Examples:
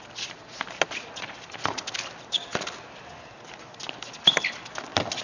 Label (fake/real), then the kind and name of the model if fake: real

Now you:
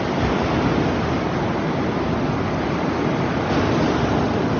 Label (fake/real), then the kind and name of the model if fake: real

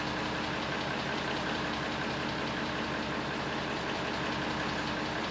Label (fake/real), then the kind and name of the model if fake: real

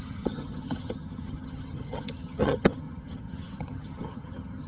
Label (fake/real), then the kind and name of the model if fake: fake, vocoder, HiFi-GAN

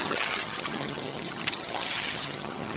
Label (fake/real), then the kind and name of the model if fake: fake, vocoder, HiFi-GAN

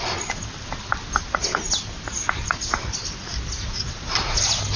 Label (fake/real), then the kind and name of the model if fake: real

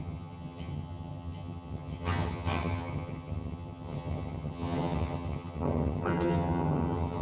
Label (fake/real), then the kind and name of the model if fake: fake, vocoder, HiFi-GAN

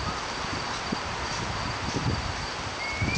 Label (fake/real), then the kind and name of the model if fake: real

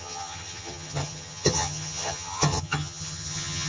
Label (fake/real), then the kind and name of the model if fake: fake, vocoder, HiFi-GAN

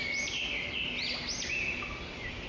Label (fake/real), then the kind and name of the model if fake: real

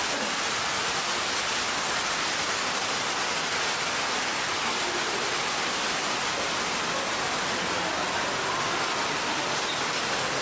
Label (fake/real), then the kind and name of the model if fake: real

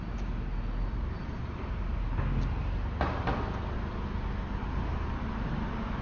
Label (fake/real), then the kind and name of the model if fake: real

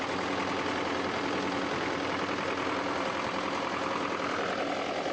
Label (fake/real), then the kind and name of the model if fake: real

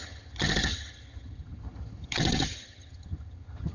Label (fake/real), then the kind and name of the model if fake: fake, vocoder, HiFi-GAN